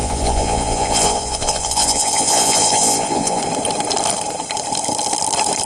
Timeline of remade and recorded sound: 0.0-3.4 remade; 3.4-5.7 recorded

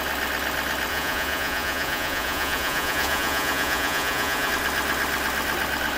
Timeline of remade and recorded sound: 0.0-0.9 recorded; 0.9-4.5 remade; 4.5-6.0 recorded

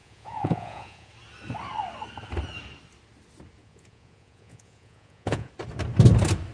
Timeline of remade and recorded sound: 0.0-1.1 remade; 1.1-3.6 recorded; 3.6-5.5 remade; 5.5-6.5 recorded

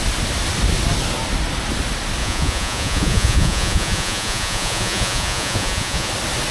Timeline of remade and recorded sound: 0.0-2.2 recorded; 2.2-6.1 remade; 6.1-6.5 recorded

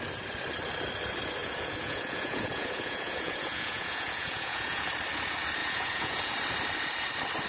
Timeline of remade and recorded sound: 0.0-1.4 recorded; 1.4-4.9 remade; 4.9-5.6 recorded; 5.6-6.3 remade; 6.3-7.5 recorded

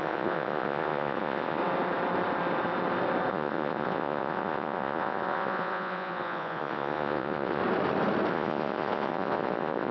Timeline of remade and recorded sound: 0.0-1.6 remade; 1.6-3.3 recorded; 3.3-7.6 remade; 7.6-8.3 recorded; 8.3-9.9 remade

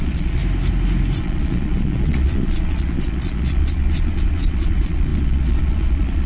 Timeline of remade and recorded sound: 0.0-0.4 remade; 0.4-1.2 recorded; 1.2-6.3 remade

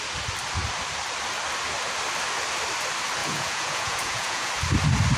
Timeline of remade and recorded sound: 0.0-3.2 recorded; 3.2-4.5 remade; 4.5-5.2 recorded